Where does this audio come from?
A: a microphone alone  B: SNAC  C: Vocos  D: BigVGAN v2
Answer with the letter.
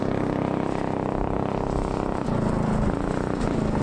A